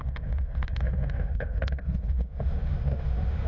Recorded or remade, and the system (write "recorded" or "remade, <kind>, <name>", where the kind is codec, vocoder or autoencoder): remade, autoencoder, DAC-VAE